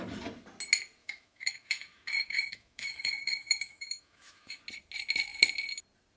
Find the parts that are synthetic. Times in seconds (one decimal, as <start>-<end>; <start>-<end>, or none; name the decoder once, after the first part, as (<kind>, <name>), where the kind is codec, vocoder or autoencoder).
1.0-4.6 (autoencoder, DAC-VAE)

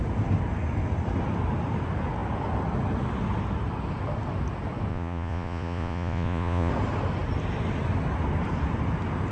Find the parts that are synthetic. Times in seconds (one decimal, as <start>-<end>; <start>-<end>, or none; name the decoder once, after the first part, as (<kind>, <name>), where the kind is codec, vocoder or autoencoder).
4.9-6.7 (vocoder, Vocos)